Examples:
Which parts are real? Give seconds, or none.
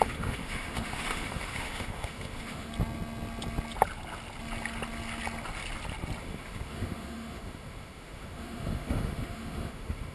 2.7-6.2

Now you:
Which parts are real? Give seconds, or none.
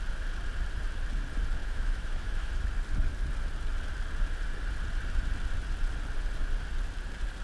0.0-1.6; 2.5-7.4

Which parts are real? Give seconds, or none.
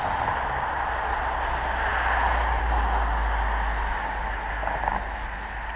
0.0-5.8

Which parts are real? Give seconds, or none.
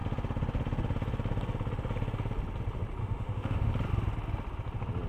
0.0-3.0; 3.7-5.1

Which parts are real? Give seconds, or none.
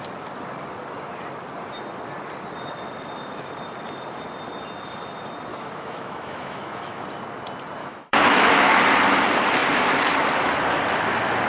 0.0-5.5; 7.0-7.8; 8.8-11.5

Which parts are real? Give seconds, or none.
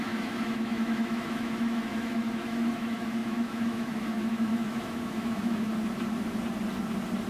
5.7-7.3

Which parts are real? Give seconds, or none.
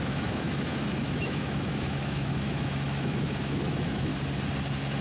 4.1-5.0